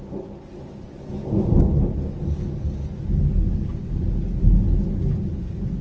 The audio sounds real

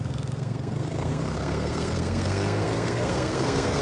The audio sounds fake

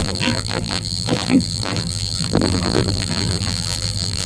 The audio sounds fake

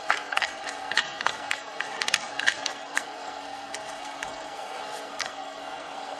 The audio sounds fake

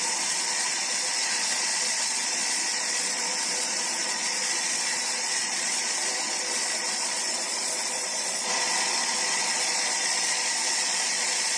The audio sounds fake